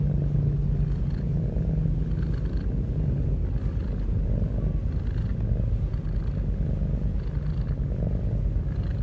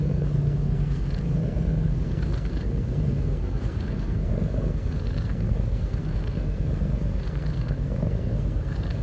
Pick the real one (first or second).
first